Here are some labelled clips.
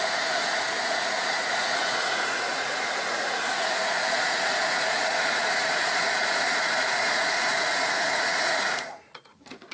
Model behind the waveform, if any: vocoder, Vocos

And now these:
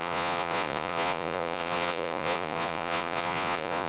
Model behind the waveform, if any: vocoder, Vocos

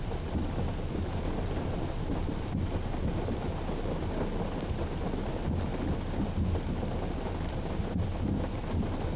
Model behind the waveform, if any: none